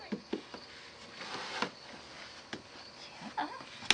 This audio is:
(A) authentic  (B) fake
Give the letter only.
A